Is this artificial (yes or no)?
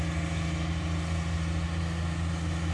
no